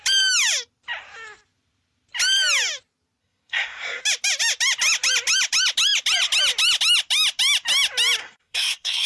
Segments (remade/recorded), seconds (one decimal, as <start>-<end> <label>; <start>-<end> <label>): 0.0-3.2 recorded; 3.2-4.0 remade; 4.0-8.2 recorded; 8.2-9.1 remade